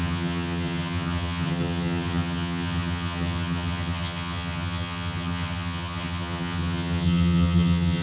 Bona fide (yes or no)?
no